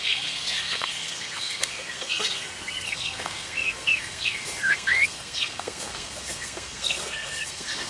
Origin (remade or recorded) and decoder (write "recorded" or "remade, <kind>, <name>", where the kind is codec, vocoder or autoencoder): remade, codec, SNAC